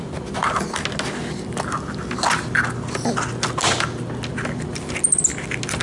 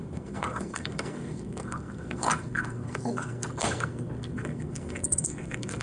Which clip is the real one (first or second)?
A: first